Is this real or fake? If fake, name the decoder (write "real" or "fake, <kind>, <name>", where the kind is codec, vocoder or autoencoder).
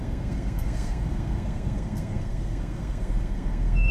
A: fake, codec, SNAC